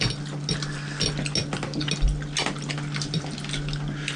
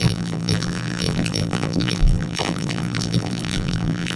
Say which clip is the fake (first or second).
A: second